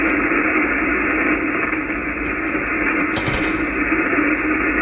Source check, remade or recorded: recorded